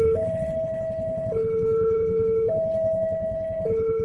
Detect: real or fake fake